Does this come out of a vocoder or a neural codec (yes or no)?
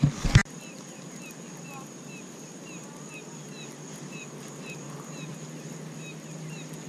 no